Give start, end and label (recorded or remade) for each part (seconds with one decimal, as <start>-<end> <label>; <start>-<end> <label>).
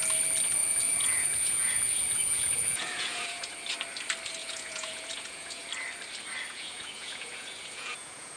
0.0-0.6 recorded; 0.6-3.5 remade; 3.5-4.4 recorded; 4.4-5.7 remade; 5.7-6.5 recorded; 6.5-8.4 remade